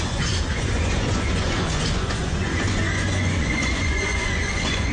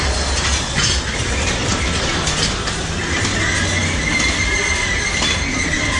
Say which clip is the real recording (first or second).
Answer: second